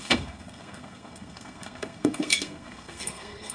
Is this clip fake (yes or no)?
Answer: yes